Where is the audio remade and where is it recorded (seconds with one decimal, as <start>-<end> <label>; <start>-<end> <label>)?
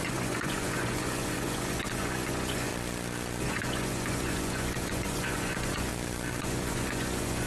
0.0-2.7 remade; 2.7-3.4 recorded; 3.4-5.9 remade; 5.9-6.4 recorded; 6.4-7.5 remade